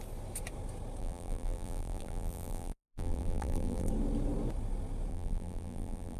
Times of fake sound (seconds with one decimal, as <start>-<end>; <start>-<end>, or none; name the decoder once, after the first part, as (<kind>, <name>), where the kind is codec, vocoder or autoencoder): 1.0-3.9 (vocoder, BigVGAN v2); 5.1-6.2